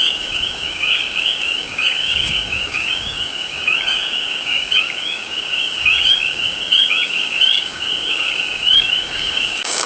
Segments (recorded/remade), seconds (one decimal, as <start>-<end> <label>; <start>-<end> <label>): 0.0-9.9 remade